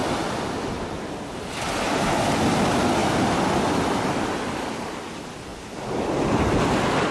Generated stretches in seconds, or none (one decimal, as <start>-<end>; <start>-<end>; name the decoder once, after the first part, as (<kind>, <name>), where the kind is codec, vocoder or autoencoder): 0.0-2.3 (vocoder, BigVGAN v2)